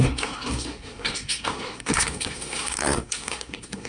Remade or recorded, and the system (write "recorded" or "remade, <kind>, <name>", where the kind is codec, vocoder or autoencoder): remade, codec, SNAC